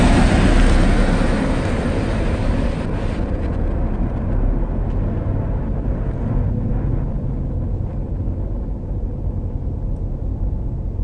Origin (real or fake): real